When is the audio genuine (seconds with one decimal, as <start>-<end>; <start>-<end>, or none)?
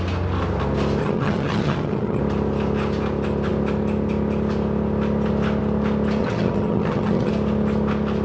0.0-1.0; 2.2-6.2; 7.3-8.2